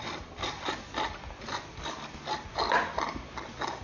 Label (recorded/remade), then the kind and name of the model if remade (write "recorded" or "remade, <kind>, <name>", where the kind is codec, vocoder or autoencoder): recorded